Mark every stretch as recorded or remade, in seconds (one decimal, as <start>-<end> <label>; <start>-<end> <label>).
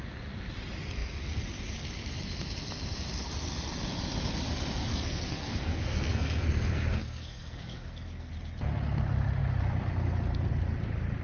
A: 0.0-4.9 recorded; 4.9-8.3 remade; 8.3-11.2 recorded